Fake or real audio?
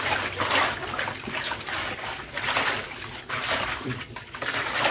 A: fake